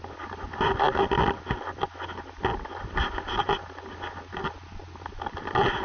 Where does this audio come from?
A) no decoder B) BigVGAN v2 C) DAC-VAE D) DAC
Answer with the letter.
A